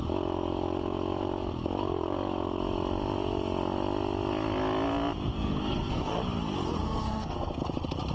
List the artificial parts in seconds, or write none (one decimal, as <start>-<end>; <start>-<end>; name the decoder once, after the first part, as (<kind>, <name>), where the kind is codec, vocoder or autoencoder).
5.3-6.2 (codec, SNAC); 6.8-7.6